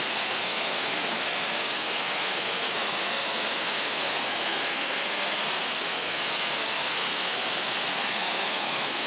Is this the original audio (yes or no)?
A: no